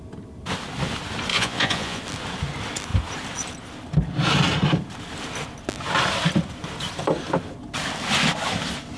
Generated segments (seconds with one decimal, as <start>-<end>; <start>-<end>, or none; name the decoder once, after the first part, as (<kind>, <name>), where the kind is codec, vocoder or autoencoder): 1.3-2.0 (vocoder, Vocos)